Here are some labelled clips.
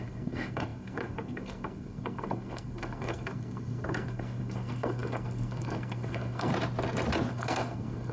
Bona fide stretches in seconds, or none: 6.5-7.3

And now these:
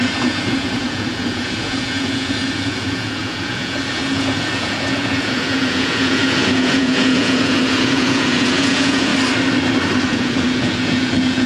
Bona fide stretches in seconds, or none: 9.1-10.0

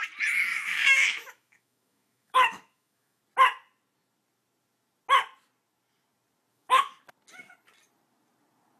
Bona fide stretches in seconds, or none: 0.0-0.5; 3.2-6.5; 7.0-8.8

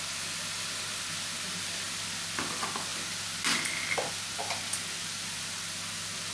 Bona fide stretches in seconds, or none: 0.0-6.3

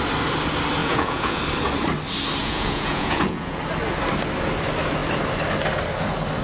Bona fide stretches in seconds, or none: 0.0-0.8; 1.4-2.4; 3.6-6.4

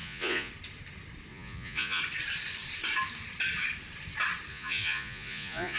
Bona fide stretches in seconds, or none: 0.5-1.3; 2.0-4.5

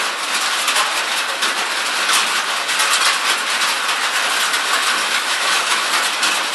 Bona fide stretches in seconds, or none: 0.0-5.0; 5.9-6.5